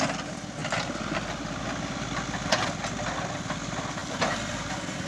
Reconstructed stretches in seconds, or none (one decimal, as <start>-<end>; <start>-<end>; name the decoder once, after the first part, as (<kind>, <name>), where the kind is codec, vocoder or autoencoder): none